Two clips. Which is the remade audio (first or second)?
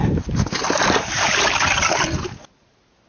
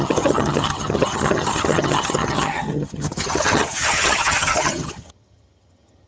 second